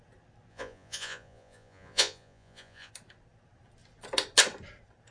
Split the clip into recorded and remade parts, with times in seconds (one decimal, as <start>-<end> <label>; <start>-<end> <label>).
0.0-0.5 recorded; 0.5-2.9 remade; 2.9-5.1 recorded